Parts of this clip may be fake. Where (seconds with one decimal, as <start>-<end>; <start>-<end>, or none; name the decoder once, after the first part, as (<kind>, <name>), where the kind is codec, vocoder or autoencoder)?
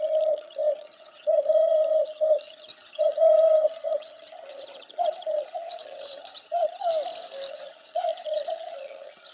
0.0-6.9 (vocoder, HiFi-GAN); 7.5-9.3